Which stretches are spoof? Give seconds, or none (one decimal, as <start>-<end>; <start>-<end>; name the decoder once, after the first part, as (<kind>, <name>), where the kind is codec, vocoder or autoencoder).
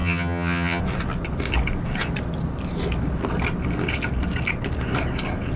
0.0-0.8 (vocoder, HiFi-GAN)